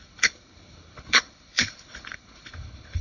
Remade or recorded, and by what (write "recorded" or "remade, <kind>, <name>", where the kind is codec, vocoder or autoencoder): remade, codec, HILCodec